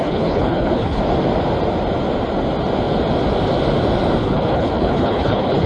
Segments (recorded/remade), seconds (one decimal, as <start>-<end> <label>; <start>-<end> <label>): 0.0-1.0 remade; 1.0-4.2 recorded; 4.2-5.7 remade